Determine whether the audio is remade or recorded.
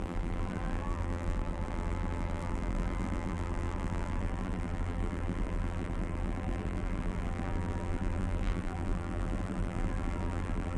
remade